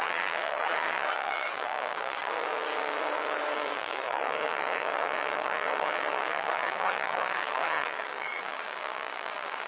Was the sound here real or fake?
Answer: fake